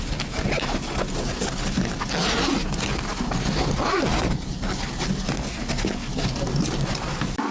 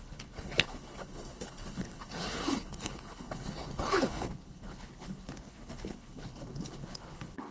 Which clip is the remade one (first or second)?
second